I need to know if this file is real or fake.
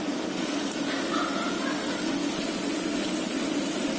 real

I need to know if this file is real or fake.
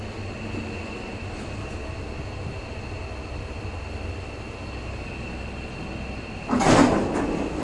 real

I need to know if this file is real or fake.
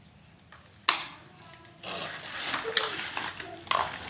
real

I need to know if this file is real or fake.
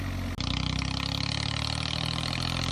real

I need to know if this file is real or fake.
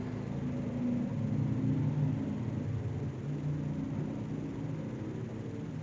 real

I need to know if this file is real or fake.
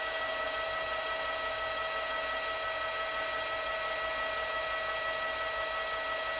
real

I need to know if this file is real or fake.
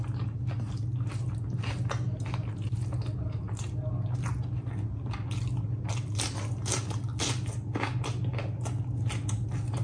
real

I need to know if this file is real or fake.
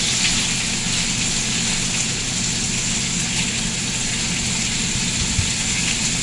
real